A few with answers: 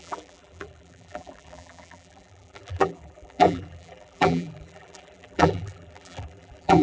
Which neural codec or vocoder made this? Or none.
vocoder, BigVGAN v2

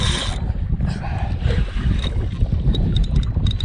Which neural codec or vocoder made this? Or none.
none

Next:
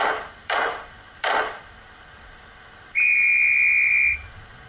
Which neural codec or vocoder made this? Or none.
vocoder, BigVGAN v2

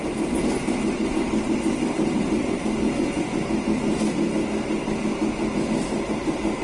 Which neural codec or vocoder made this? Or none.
none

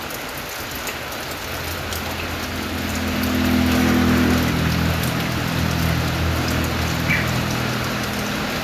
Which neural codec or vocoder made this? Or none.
none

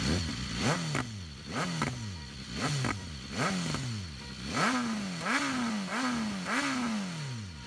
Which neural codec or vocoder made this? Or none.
none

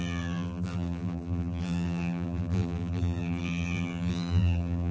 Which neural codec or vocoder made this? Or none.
vocoder, BigVGAN v2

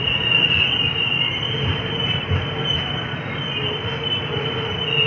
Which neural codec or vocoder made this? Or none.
none